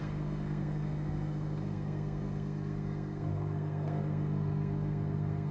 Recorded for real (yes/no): no